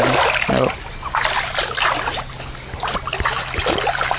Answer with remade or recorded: recorded